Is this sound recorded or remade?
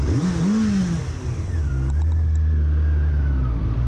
recorded